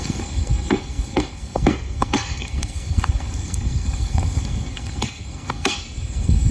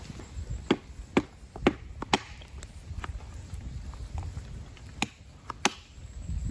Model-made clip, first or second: first